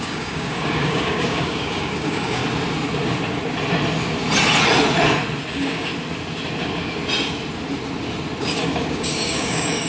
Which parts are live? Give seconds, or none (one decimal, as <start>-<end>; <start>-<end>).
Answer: 2.4-5.5; 5.9-8.4